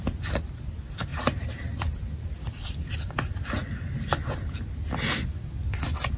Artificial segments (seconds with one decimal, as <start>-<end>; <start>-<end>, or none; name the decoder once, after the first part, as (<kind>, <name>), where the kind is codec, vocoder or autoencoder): none